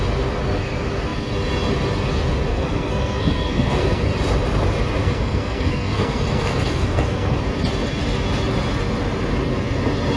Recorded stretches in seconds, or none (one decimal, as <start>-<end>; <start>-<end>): 0.0-2.5; 4.1-5.0; 7.4-10.2